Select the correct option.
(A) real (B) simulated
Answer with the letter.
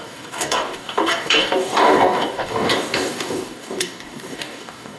B